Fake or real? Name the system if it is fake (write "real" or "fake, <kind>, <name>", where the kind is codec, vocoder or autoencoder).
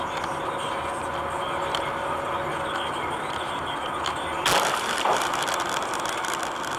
real